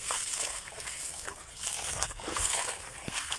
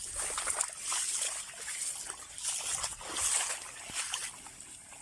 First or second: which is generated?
first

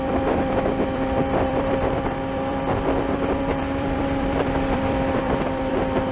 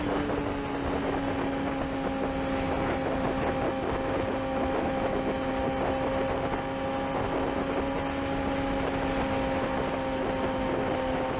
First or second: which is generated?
first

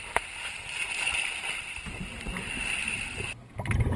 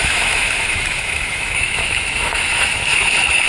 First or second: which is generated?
second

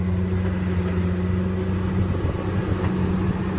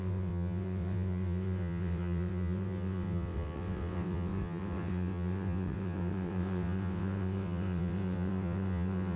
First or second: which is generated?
second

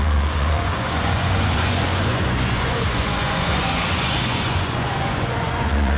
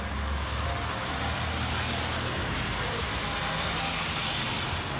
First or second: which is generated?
first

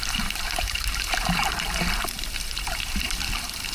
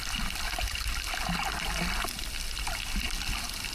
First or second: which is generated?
first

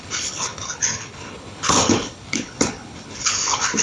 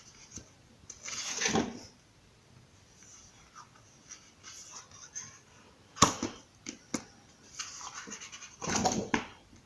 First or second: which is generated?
first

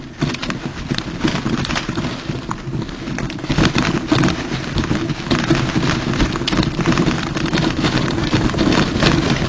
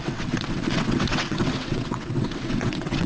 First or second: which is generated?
second